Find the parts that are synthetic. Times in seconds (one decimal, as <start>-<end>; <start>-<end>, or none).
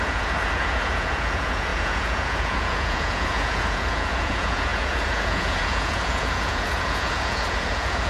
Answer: 0.0-8.1